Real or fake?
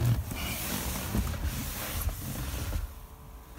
real